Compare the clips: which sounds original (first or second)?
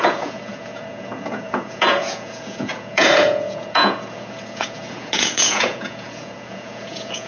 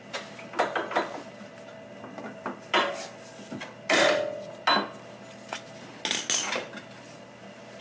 second